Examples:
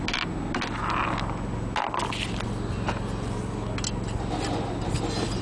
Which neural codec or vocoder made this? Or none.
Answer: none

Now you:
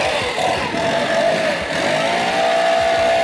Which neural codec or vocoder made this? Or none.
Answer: none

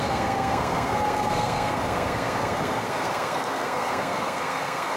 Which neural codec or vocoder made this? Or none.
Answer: codec, SNAC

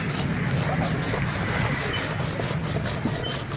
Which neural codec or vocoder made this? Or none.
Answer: none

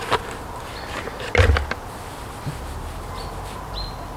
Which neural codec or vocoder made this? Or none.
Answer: none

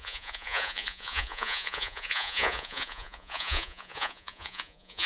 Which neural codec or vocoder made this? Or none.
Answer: vocoder, Vocos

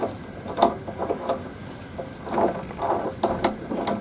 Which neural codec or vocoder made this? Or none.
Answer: none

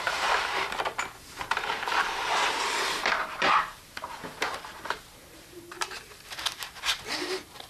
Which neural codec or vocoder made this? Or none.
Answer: vocoder, BigVGAN v2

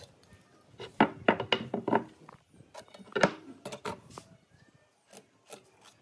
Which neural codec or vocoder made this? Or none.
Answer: none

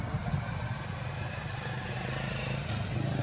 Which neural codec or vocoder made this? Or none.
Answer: none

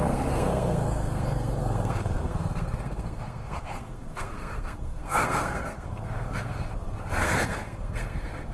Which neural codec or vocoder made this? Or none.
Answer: codec, SNAC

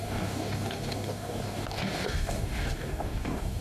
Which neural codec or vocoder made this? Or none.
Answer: codec, DAC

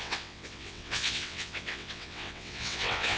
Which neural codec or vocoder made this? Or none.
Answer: vocoder, WaveNeXt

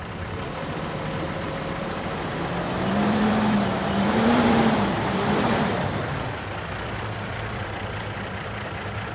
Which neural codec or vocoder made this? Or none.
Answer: vocoder, BigVGAN v2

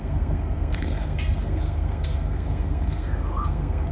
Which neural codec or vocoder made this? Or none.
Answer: codec, SNAC